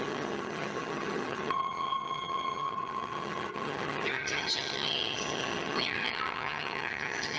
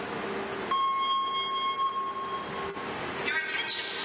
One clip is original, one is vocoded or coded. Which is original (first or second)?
second